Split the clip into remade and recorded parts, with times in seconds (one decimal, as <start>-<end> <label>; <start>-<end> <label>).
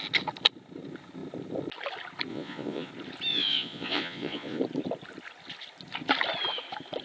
0.0-2.3 recorded; 2.3-2.9 remade; 2.9-3.3 recorded; 3.3-4.6 remade; 4.6-7.0 recorded